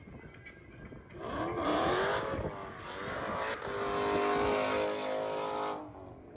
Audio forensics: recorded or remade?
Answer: recorded